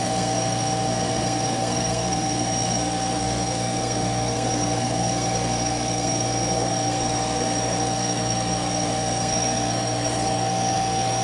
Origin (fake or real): fake